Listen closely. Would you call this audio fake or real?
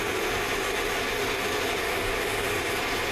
real